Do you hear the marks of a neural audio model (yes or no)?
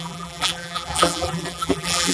yes